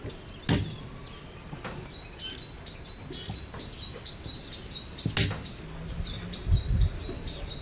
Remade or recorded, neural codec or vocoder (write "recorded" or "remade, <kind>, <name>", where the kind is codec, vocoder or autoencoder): recorded